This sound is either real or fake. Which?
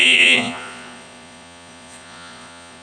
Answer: fake